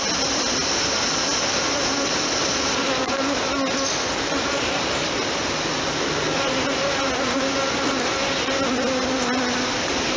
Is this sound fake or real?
real